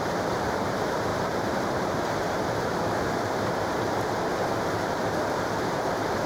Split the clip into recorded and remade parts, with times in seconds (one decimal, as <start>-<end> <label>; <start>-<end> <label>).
0.0-6.3 remade